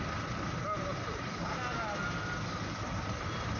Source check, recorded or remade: recorded